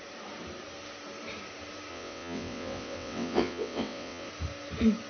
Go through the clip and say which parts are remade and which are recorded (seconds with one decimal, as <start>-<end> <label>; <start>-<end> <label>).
0.0-1.9 recorded; 1.9-4.3 remade; 4.3-5.1 recorded